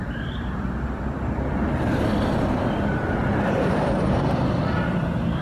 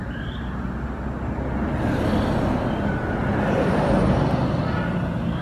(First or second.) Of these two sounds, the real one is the second